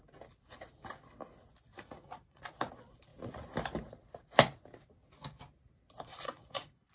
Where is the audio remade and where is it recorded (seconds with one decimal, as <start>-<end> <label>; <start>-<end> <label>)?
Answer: 0.0-1.7 recorded; 1.7-2.4 remade; 2.4-6.1 recorded; 6.1-6.9 remade